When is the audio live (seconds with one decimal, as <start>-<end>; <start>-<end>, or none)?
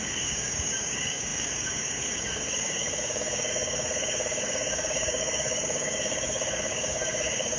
none